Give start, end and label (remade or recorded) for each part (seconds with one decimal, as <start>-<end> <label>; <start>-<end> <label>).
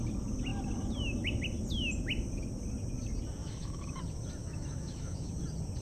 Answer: 0.0-3.4 recorded; 3.4-4.0 remade; 4.0-4.4 recorded; 4.4-5.3 remade; 5.3-5.8 recorded